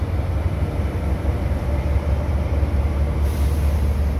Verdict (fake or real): real